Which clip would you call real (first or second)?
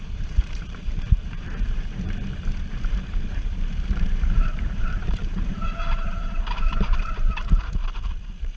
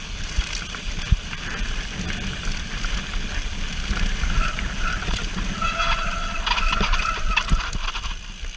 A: second